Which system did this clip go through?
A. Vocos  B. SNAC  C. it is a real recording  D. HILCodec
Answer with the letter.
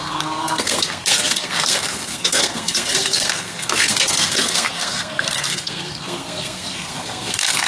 B